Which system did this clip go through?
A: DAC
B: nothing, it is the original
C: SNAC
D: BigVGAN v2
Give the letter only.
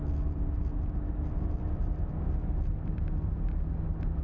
B